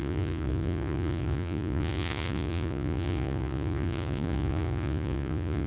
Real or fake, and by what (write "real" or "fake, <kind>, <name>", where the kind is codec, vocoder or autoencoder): fake, vocoder, Vocos